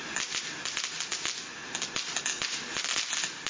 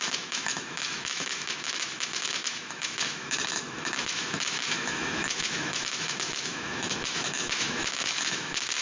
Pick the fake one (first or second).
second